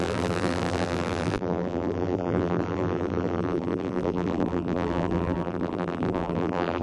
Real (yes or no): no